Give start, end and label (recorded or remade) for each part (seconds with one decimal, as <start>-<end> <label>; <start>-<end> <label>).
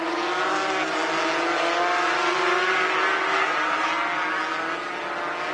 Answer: 0.0-5.5 recorded